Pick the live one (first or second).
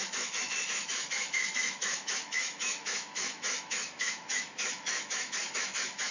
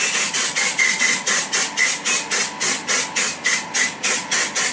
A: second